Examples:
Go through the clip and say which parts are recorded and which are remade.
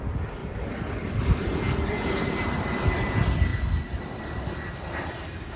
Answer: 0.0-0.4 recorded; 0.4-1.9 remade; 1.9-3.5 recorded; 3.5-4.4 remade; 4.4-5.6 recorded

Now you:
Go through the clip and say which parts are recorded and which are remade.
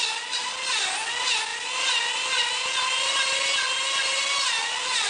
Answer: 0.0-5.1 recorded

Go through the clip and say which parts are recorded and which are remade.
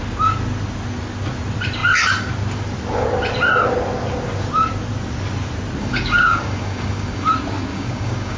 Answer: 0.0-5.8 recorded; 5.8-7.3 remade; 7.3-7.7 recorded; 7.7-8.4 remade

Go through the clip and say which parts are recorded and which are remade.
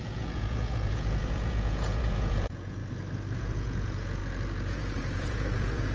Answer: 0.0-2.8 remade; 2.8-3.4 recorded; 3.4-4.2 remade; 4.2-4.7 recorded; 4.7-5.9 remade